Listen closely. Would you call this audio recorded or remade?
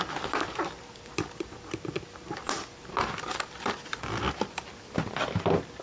remade